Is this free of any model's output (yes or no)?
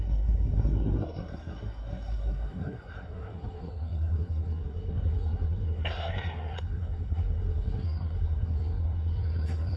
no